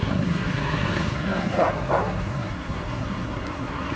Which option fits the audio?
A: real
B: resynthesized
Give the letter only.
B